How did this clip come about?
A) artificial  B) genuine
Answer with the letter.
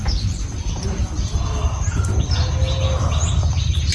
B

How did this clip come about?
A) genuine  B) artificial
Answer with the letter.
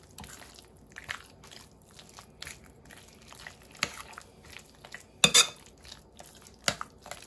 A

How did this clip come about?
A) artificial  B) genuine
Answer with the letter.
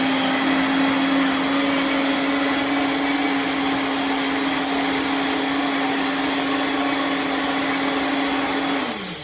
B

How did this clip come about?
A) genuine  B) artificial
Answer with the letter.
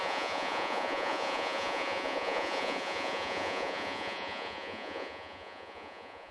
B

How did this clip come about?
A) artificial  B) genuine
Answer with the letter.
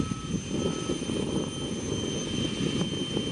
B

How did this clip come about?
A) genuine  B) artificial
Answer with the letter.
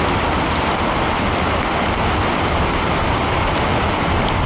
A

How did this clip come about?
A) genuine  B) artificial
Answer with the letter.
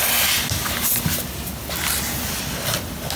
A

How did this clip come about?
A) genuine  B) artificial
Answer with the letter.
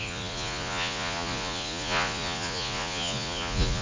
B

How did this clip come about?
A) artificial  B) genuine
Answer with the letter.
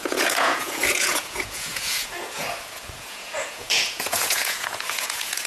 A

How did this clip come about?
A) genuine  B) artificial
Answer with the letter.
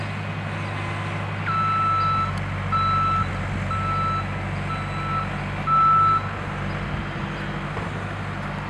A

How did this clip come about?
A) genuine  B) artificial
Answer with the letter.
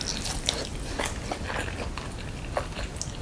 A